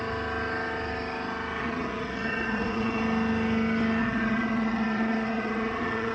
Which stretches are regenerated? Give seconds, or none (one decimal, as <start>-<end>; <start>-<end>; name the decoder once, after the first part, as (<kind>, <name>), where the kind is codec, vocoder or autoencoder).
1.6-3.0 (vocoder, Vocos); 4.0-6.1